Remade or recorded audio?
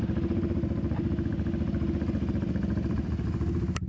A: recorded